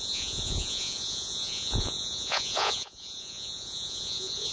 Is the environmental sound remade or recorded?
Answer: remade